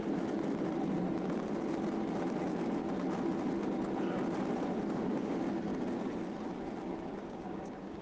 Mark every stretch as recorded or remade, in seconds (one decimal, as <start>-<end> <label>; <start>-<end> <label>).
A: 0.0-4.8 recorded; 4.8-5.7 remade; 5.7-7.2 recorded; 7.2-8.0 remade